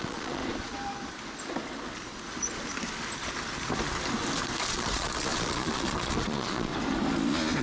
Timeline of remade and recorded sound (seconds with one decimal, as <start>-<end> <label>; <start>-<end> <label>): 0.0-0.4 remade; 0.4-4.7 recorded; 4.7-6.7 remade; 6.7-7.6 recorded